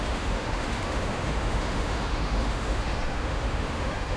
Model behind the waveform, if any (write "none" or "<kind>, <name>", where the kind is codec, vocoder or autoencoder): autoencoder, DAC-VAE